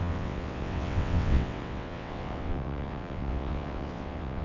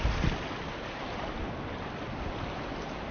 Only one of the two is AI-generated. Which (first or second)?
first